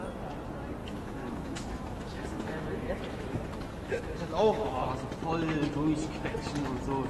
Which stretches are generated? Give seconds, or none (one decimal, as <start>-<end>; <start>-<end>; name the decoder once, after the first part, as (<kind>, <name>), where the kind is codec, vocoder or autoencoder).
0.8-4.9 (autoencoder, DAC-VAE)